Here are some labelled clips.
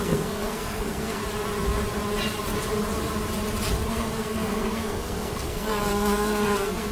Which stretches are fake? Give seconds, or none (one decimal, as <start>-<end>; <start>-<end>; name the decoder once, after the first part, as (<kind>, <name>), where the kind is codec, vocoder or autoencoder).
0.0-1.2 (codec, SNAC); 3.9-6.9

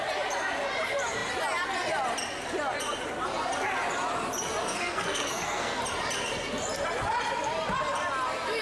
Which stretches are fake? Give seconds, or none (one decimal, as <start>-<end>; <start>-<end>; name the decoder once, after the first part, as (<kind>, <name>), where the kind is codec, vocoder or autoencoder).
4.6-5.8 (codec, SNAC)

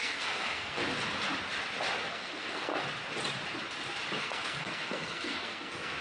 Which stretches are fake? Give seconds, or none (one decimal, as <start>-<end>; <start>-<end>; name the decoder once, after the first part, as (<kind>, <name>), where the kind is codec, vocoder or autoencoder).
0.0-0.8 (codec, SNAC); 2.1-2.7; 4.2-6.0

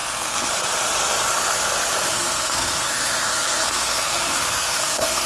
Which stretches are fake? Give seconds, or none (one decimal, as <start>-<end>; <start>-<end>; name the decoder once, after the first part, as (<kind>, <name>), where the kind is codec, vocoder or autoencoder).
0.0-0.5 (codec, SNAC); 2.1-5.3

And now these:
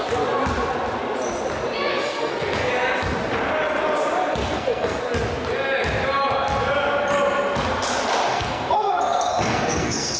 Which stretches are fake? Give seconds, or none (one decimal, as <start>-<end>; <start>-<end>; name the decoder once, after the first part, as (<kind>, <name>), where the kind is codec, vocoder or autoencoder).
1.9-2.7 (codec, SNAC); 4.4-5.0; 8.3-10.2